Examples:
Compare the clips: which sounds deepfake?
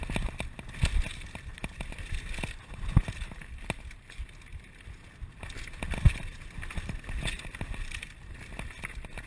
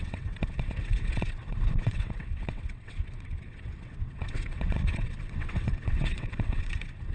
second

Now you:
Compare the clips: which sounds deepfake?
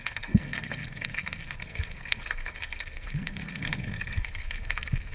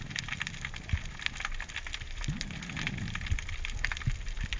first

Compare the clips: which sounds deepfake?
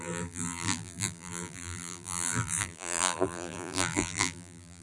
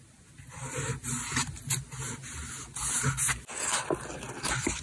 first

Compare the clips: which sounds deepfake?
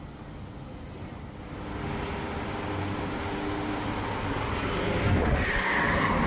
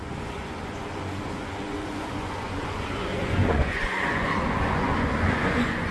second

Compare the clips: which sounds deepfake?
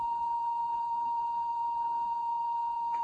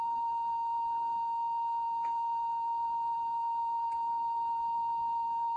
first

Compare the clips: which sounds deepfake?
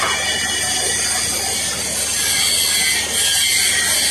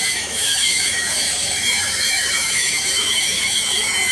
second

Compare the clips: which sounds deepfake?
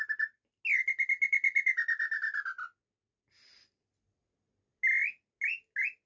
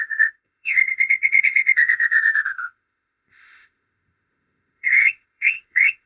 second